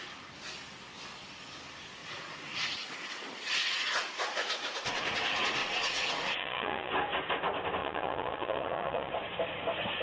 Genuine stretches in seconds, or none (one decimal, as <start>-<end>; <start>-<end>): 0.0-2.0; 5.0-5.6; 6.9-7.8; 9.1-10.0